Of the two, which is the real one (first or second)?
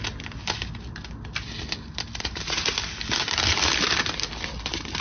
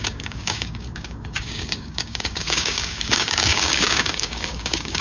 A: first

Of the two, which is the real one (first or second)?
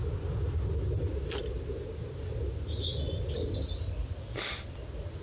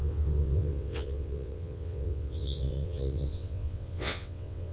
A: first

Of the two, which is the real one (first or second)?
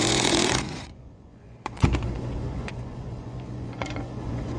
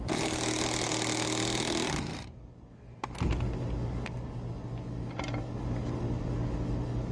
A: second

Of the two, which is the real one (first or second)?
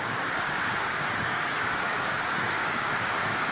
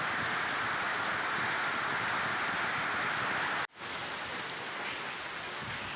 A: second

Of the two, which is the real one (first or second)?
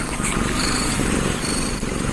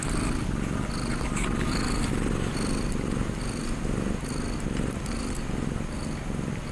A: second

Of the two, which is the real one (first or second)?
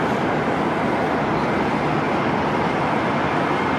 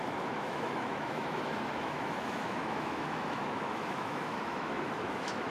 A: first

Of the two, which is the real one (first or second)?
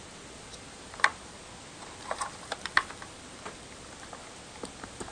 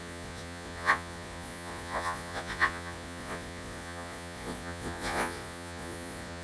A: first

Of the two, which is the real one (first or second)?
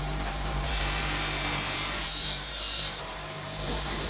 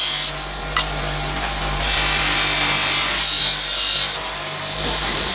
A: second